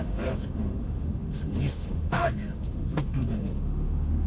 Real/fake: fake